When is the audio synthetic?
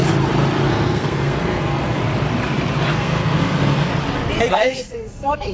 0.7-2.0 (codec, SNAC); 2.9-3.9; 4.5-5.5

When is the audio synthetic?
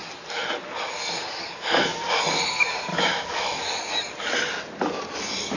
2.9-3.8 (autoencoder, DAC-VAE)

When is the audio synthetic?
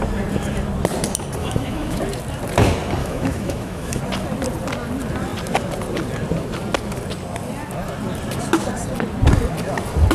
1.4-2.0 (autoencoder, DAC-VAE); 3.0-4.0